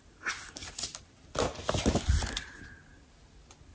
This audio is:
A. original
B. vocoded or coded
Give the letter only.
A